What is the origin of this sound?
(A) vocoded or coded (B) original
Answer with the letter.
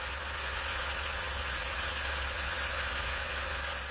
A